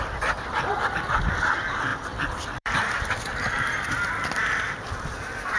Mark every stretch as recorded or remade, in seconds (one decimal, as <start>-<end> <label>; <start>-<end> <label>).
0.0-1.9 recorded; 1.9-4.6 remade; 4.6-5.6 recorded